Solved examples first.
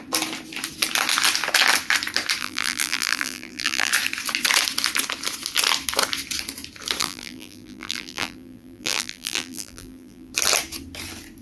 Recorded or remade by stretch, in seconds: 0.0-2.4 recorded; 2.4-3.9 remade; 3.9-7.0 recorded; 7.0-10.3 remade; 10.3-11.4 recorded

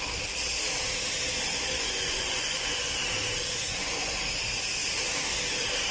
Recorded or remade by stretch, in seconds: 0.0-1.5 recorded; 1.5-2.9 remade; 2.9-3.4 recorded; 3.4-4.2 remade; 4.2-5.9 recorded

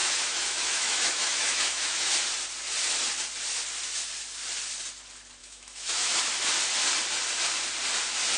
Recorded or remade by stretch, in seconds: 0.0-2.1 remade; 2.1-5.4 recorded; 5.4-6.2 remade; 6.2-8.4 recorded